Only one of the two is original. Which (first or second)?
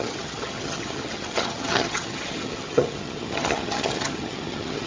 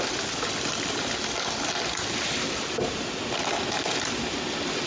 second